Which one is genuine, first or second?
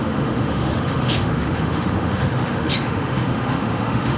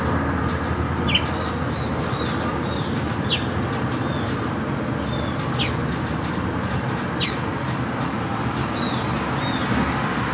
second